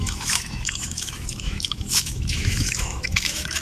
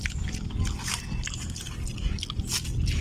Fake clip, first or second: first